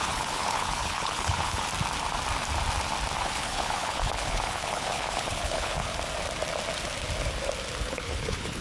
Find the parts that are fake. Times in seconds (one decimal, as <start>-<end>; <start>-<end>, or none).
0.0-1.7; 3.2-5.9; 7.8-8.6